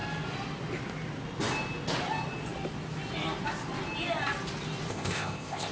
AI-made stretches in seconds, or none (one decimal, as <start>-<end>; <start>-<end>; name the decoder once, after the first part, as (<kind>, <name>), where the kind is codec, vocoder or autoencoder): 4.9-5.7 (codec, ZipCodec)